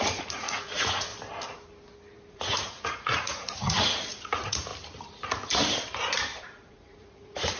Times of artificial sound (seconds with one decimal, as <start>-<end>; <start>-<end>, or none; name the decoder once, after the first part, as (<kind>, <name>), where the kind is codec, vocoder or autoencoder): 0.0-1.1 (vocoder, Vocos); 2.3-4.7; 6.4-7.6